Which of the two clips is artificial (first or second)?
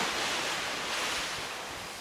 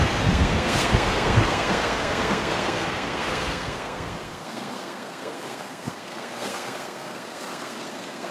second